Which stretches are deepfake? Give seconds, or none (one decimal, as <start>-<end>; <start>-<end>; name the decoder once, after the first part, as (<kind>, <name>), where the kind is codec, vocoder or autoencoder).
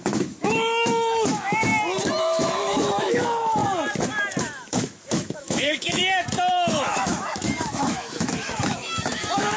0.0-1.7 (autoencoder, DAC-VAE); 2.2-3.6; 4.4-6.0; 6.5-9.6